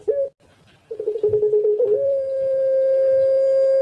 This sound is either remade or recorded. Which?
recorded